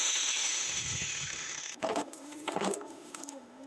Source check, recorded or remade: remade